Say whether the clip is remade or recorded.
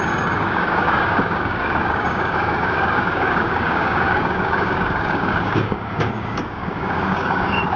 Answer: remade